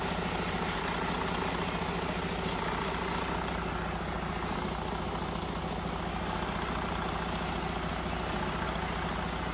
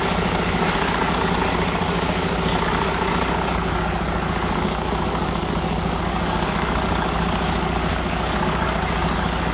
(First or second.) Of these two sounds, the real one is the first